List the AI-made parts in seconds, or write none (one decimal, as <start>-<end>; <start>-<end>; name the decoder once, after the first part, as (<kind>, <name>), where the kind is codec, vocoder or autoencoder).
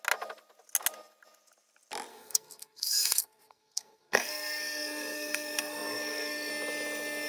2.1-6.5 (codec, SNAC)